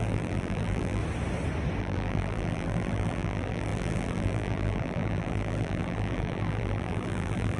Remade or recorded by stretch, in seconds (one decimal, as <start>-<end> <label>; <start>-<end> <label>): 0.0-1.0 remade; 1.0-1.8 recorded; 1.8-7.6 remade